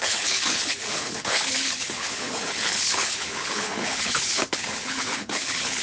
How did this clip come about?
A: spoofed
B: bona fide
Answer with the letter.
A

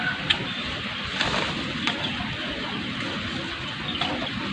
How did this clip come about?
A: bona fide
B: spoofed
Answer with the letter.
A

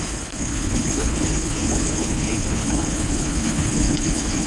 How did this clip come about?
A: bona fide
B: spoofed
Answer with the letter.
B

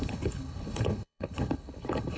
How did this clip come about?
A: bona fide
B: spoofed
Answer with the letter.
B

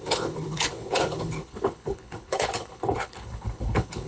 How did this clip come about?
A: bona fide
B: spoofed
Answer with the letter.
B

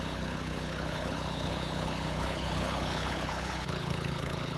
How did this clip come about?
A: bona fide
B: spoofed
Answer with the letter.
B